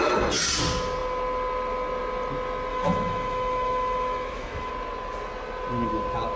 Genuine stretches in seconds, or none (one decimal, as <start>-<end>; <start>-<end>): 0.0-2.7; 4.7-6.4